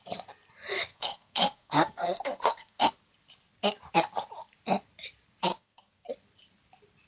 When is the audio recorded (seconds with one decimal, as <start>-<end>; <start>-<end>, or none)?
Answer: 0.0-0.9; 2.9-5.5; 6.1-7.1